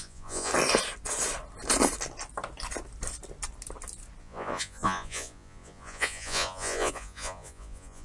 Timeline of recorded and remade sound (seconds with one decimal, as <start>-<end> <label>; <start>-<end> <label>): 0.0-0.5 remade; 0.5-4.2 recorded; 4.2-8.0 remade

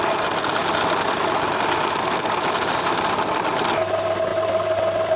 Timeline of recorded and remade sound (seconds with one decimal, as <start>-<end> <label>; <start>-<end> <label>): 0.0-0.6 recorded; 0.6-3.7 remade; 3.7-5.2 recorded

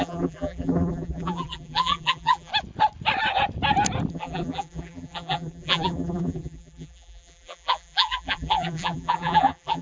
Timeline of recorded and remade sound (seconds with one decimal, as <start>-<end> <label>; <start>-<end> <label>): 0.0-2.5 remade; 2.5-4.1 recorded; 4.1-9.8 remade

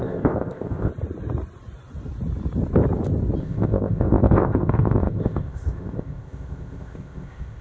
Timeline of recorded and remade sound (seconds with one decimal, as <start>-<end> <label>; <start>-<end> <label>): 0.0-0.9 remade; 0.9-3.4 recorded; 3.4-7.6 remade